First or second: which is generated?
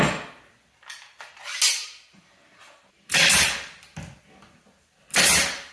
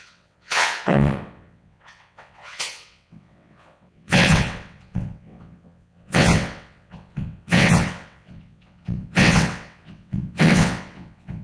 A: second